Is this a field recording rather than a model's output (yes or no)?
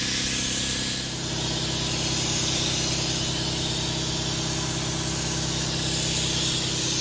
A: yes